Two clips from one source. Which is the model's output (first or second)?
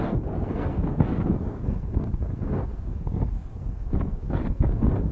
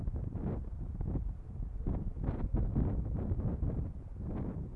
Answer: first